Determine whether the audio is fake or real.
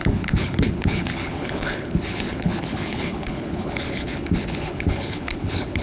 fake